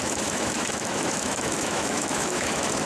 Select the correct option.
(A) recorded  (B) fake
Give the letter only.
B